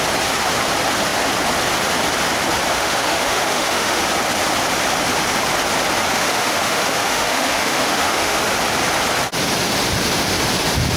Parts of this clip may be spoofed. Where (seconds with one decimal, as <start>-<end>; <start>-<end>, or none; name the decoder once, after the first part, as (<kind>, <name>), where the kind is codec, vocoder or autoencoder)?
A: 2.7-4.0 (autoencoder, DAC-VAE); 6.1-8.4